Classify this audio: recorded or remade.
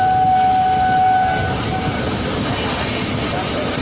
recorded